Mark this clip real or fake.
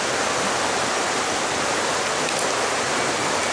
real